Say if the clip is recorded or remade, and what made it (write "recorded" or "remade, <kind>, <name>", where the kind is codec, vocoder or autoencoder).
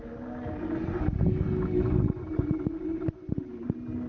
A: recorded